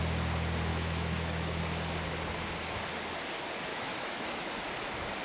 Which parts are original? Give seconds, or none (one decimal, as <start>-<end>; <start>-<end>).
0.0-0.7; 1.6-3.7; 4.5-5.2